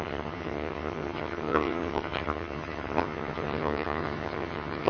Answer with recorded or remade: remade